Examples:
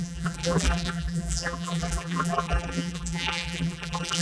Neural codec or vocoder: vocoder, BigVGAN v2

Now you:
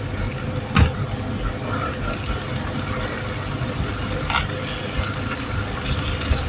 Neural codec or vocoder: none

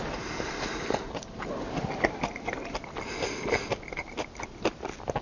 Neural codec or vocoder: none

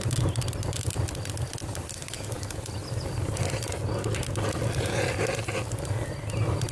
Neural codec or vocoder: none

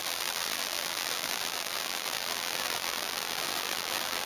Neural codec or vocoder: vocoder, BigVGAN v2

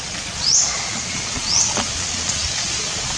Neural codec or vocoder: vocoder, Vocos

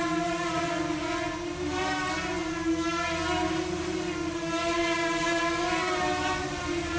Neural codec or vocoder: none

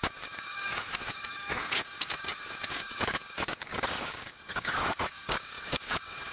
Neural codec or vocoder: codec, DAC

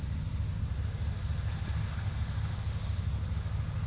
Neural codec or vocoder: none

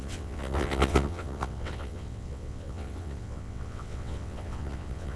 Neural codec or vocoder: vocoder, WaveNeXt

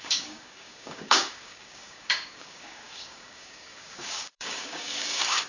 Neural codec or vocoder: codec, DAC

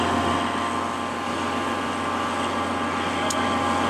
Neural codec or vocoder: none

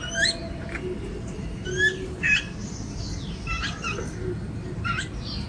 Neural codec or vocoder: none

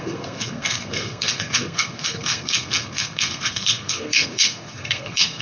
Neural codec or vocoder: codec, SNAC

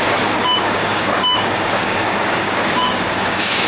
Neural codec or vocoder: codec, DAC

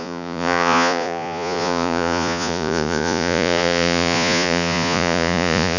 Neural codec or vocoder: vocoder, Vocos